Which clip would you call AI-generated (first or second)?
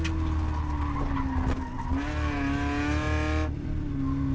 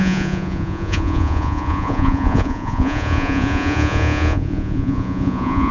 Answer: second